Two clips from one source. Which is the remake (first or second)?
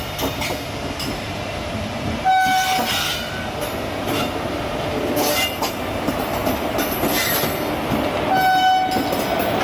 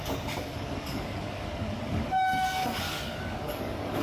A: second